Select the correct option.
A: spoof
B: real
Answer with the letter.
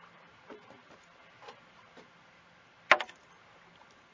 B